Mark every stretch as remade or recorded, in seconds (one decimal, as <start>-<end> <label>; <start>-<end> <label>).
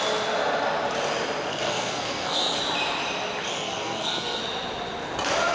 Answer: 0.0-1.5 recorded; 1.5-2.6 remade; 2.6-3.5 recorded; 3.5-4.4 remade; 4.4-5.5 recorded